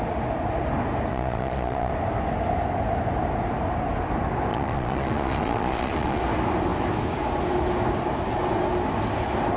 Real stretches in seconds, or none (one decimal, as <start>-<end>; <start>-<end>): 0.0-1.1; 1.9-4.5; 6.2-9.6